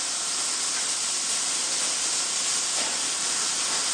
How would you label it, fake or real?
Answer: real